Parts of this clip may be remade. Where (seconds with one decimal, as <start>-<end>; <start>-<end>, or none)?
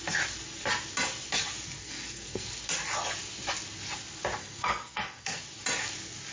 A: 1.8-2.5; 4.4-5.4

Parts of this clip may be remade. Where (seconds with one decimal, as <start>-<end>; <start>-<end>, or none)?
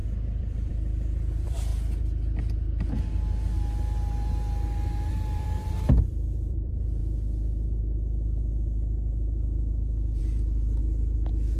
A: 0.0-1.7; 5.1-7.0; 10.2-11.6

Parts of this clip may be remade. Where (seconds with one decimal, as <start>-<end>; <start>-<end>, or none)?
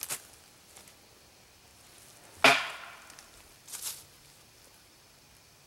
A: none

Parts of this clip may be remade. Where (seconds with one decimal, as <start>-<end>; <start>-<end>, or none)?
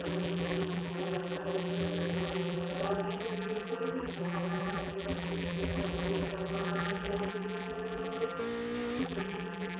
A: 0.0-8.4; 9.0-9.8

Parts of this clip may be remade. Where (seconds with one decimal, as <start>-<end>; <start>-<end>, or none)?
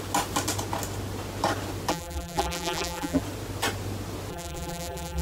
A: 1.9-3.2; 4.3-5.2